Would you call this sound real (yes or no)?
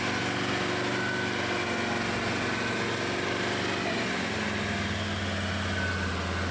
yes